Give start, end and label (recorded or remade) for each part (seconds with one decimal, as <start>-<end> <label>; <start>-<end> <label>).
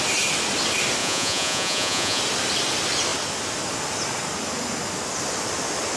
0.0-1.0 recorded; 1.0-2.2 remade; 2.2-6.0 recorded